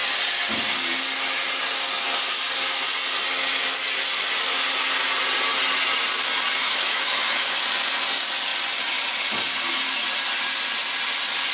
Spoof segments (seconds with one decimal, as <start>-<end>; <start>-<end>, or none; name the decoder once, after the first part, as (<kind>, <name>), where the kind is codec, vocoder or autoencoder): 6.6-7.6 (autoencoder, DAC-VAE)